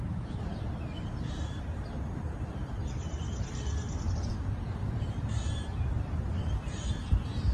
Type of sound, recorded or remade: remade